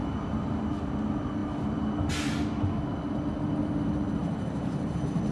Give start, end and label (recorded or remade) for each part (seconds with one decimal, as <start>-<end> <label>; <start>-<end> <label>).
0.0-0.6 remade; 0.6-4.2 recorded; 4.2-5.3 remade